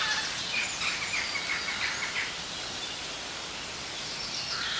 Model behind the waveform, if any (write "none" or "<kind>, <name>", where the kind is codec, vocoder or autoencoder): none